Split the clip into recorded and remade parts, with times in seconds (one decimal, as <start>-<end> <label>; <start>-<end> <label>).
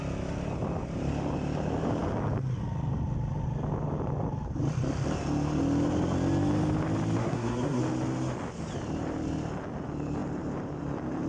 0.0-7.2 recorded; 7.2-7.8 remade; 7.8-11.3 recorded